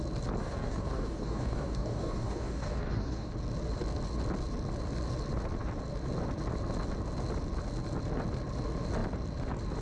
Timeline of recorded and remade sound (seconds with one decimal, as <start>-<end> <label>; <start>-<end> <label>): 0.0-0.4 recorded; 0.4-3.3 remade; 3.3-9.8 recorded